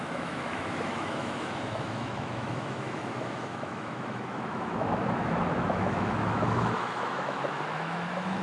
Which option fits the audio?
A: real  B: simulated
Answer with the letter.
B